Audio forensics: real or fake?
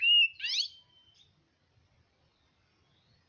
real